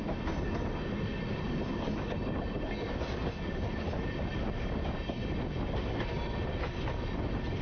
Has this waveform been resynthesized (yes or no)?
no